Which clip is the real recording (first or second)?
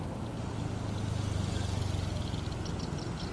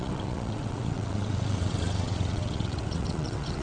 first